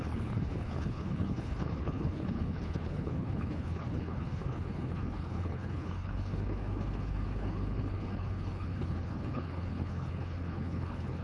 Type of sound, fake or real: fake